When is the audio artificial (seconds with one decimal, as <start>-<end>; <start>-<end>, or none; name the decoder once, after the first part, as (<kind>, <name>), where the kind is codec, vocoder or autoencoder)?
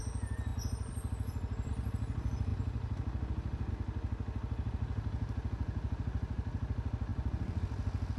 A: 0.5-1.7 (vocoder, BigVGAN v2); 7.1-7.6